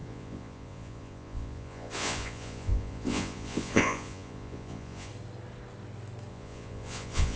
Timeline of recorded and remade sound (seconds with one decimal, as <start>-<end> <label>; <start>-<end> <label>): 0.0-5.1 remade; 5.1-6.3 recorded; 6.3-7.4 remade